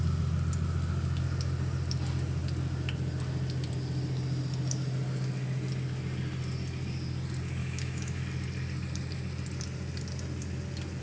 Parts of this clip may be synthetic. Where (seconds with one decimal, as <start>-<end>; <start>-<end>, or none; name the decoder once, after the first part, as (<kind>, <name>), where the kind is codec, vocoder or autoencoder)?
7.6-8.2 (autoencoder, DAC-VAE)

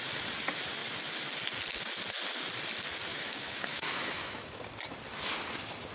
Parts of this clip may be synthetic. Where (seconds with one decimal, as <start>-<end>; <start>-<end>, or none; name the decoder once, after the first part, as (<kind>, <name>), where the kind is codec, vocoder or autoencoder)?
3.1-4.6 (autoencoder, DAC-VAE)

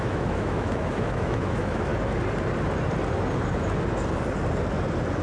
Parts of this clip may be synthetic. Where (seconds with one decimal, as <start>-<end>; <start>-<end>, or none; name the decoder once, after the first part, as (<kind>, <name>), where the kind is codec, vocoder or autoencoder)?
0.0-1.9 (autoencoder, DAC-VAE)

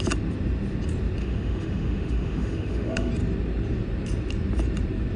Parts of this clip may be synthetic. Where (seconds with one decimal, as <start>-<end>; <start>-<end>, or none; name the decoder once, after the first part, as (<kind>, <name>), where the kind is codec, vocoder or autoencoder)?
1.2-3.1 (autoencoder, DAC-VAE)

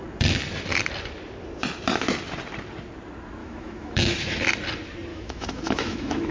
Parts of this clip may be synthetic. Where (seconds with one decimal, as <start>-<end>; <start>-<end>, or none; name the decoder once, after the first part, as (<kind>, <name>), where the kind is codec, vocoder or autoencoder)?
3.4-4.4 (autoencoder, DAC-VAE); 5.1-6.3

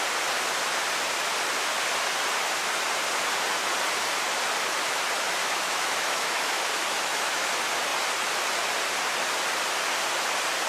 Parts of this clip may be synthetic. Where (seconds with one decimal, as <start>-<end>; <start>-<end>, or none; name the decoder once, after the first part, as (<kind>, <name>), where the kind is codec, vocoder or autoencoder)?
5.4-7.5 (autoencoder, DAC-VAE)